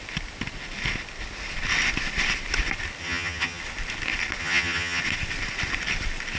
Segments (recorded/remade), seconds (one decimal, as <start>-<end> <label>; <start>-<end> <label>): 0.0-3.0 recorded; 3.0-3.6 remade; 3.6-4.4 recorded; 4.4-5.0 remade; 5.0-6.4 recorded